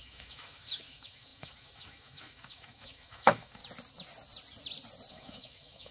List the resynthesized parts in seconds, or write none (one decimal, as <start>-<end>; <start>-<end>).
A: 0.0-3.6; 5.1-5.9